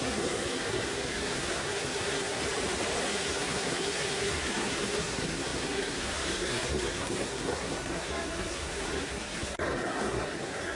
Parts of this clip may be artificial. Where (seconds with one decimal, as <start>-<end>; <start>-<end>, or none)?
0.0-2.4; 3.0-10.8